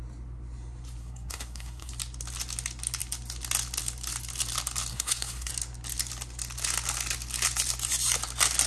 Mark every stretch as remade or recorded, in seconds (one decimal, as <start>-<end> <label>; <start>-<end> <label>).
0.0-1.0 recorded; 1.0-1.9 remade; 1.9-4.9 recorded; 4.9-5.5 remade; 5.5-8.7 recorded